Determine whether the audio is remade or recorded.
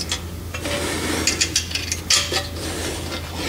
recorded